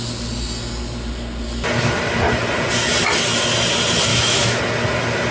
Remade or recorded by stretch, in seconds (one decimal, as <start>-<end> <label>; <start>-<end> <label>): 0.0-4.1 recorded; 4.1-4.6 remade; 4.6-5.3 recorded